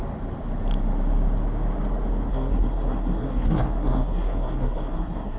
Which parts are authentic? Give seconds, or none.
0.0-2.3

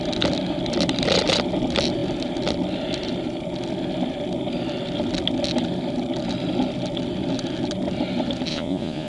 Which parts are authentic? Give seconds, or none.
0.0-8.5

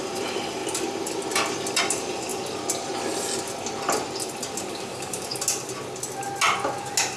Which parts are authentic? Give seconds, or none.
0.6-1.8; 2.3-4.7; 5.3-7.2

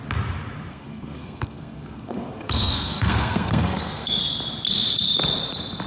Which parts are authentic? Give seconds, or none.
0.0-0.7; 4.2-5.9

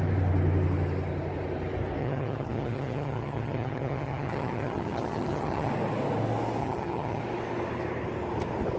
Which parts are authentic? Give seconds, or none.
0.0-2.0; 5.7-6.6; 7.2-8.8

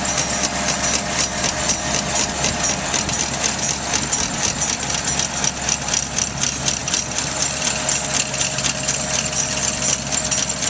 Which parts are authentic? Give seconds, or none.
0.0-6.8; 7.4-10.7